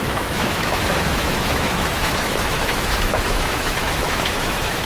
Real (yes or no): no